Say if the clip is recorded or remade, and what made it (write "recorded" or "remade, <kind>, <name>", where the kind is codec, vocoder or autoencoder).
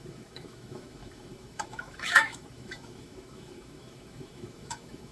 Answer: remade, autoencoder, DAC-VAE